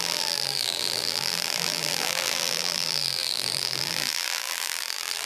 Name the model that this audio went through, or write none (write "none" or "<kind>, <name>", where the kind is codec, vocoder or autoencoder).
vocoder, BigVGAN v2